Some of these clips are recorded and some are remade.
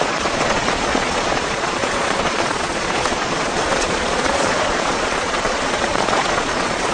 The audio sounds remade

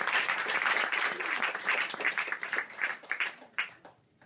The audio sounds remade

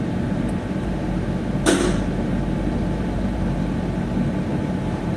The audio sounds remade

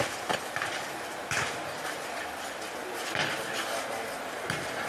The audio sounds recorded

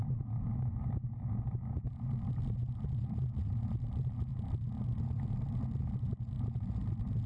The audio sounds recorded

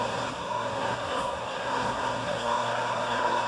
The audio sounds remade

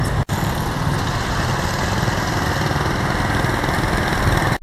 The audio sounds recorded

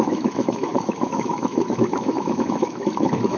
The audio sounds remade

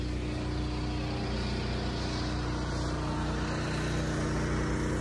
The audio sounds recorded